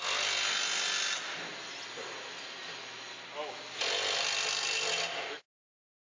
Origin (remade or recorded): recorded